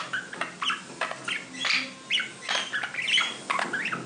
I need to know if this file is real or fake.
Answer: real